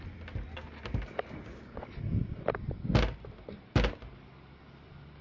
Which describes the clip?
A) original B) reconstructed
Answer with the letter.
A